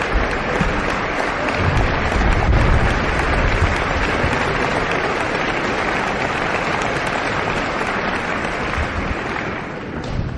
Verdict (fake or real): real